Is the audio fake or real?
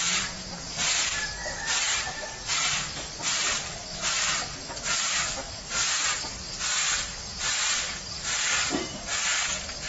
real